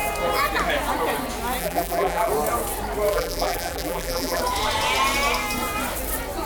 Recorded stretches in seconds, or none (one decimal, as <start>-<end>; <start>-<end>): 0.0-1.6; 2.3-3.1; 4.4-6.5